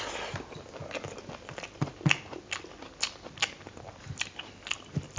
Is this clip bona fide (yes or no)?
yes